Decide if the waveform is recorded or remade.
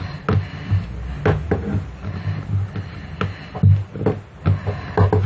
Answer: recorded